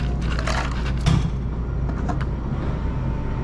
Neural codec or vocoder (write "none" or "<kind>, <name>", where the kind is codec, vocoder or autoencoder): none